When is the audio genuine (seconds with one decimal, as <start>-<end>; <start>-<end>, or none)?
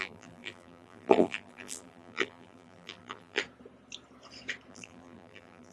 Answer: 3.4-4.7